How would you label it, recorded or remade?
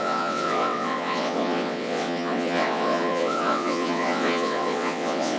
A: remade